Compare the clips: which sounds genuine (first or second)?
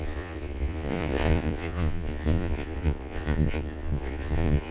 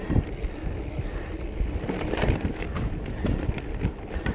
second